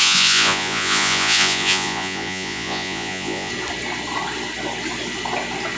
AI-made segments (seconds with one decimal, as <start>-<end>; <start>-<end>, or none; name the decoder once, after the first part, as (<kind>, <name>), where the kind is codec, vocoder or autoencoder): 0.0-3.5 (vocoder, Vocos)